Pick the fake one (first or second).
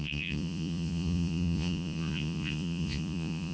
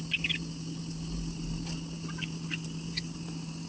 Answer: first